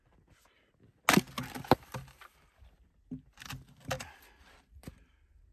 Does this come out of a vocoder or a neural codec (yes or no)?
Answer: no